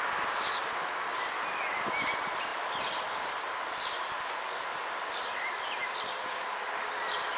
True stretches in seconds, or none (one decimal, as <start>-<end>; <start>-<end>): 0.0-7.4